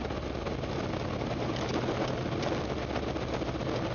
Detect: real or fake real